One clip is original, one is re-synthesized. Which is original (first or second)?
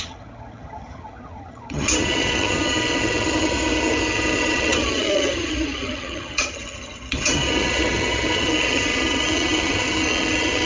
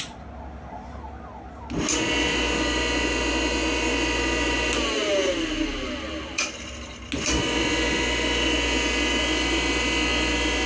second